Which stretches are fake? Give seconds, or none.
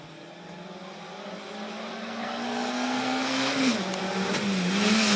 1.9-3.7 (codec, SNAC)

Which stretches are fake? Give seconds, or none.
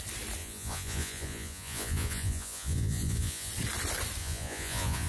0.4-3.5 (vocoder, Vocos); 4.2-5.1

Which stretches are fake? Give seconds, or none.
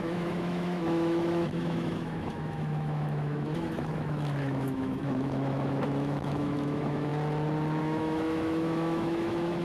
0.0-7.1 (autoencoder, DAC-VAE); 7.8-9.6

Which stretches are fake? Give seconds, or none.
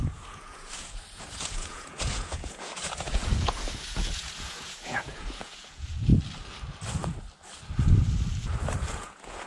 0.0-6.1 (vocoder, Vocos); 8.9-9.5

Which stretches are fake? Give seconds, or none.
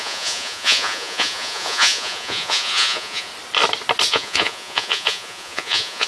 0.0-3.3 (vocoder, Vocos); 4.1-6.1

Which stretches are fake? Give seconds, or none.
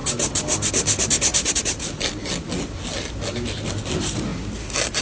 none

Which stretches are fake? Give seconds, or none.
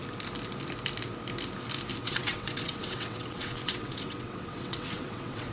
2.0-5.5 (vocoder, WaveNeXt)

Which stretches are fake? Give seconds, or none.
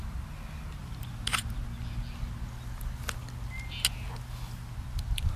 0.7-1.6 (vocoder, BigVGAN v2); 4.8-5.4